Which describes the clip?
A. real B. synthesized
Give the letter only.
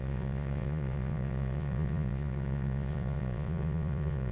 B